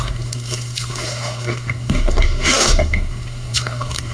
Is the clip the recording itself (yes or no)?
no